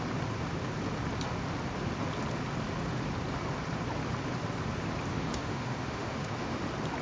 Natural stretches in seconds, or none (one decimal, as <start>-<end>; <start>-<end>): 0.0-5.1; 6.6-7.0